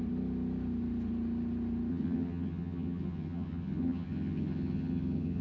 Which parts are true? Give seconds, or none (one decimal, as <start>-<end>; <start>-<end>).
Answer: 0.0-1.9